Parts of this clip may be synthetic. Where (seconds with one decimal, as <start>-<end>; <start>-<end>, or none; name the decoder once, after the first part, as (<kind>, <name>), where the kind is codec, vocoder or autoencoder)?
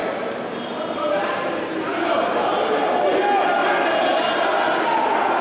none